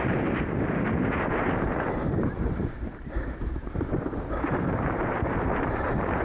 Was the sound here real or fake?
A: fake